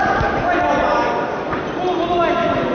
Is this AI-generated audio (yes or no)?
no